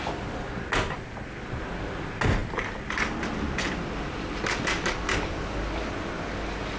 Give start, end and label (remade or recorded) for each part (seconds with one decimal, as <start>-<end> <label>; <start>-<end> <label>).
0.0-6.8 recorded